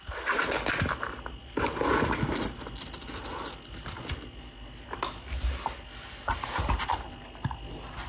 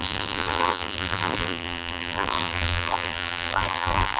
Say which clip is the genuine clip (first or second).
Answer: first